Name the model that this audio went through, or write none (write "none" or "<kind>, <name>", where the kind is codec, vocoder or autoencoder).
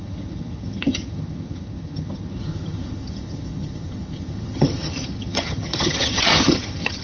vocoder, HiFi-GAN